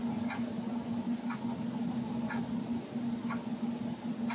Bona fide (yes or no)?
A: yes